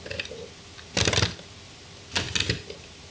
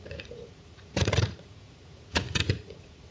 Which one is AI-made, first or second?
second